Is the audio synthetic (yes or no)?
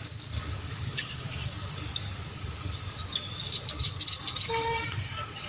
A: yes